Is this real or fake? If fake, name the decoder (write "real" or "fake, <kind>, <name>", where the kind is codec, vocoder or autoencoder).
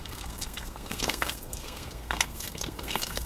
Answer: fake, codec, SNAC